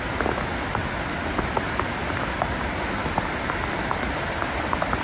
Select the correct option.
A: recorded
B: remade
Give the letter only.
A